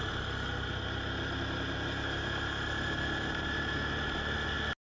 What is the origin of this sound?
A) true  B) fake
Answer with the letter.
A